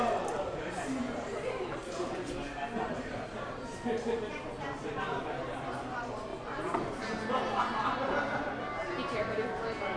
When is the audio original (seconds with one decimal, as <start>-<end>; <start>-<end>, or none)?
6.3-6.9